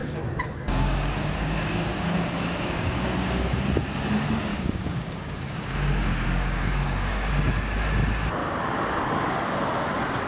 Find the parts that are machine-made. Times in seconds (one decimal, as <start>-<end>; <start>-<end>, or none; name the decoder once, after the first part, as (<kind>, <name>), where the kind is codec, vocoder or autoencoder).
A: 0.0-3.6 (codec, DAC); 4.5-7.3; 8.4-9.0